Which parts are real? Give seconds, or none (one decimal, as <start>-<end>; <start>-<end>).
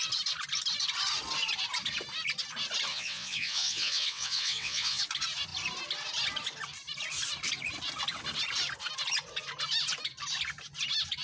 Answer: 0.0-2.9; 5.0-11.2